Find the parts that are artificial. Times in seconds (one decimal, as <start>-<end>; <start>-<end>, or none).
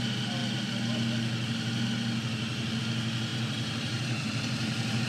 3.3-5.1